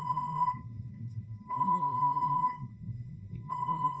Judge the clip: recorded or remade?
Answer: remade